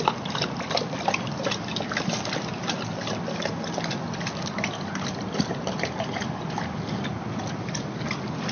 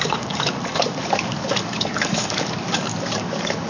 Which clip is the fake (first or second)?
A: second